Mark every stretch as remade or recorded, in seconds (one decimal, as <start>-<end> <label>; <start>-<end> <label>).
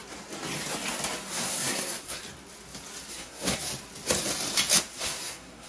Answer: 0.0-1.3 recorded; 1.3-2.2 remade; 2.2-3.1 recorded; 3.1-3.7 remade; 3.7-4.8 recorded; 4.8-5.7 remade